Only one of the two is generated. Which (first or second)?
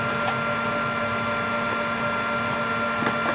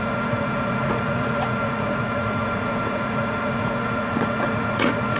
second